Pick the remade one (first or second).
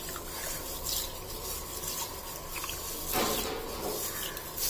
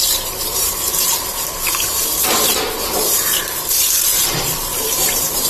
second